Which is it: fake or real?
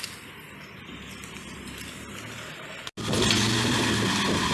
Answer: real